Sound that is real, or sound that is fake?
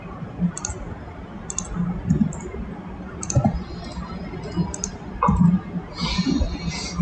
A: real